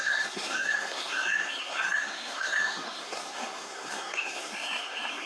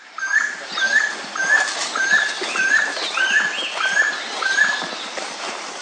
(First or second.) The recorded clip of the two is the second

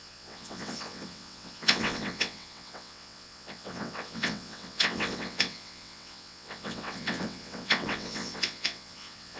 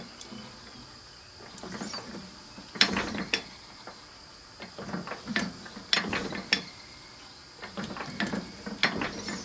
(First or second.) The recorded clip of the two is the second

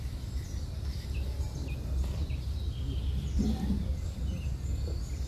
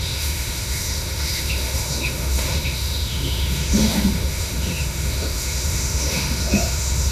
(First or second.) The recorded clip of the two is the first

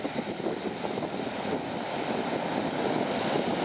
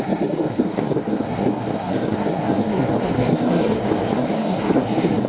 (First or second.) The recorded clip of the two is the first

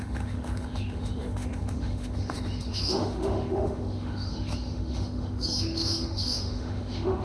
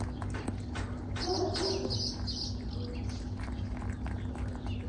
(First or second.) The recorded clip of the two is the second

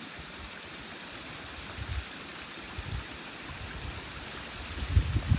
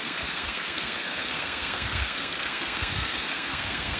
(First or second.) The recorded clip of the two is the first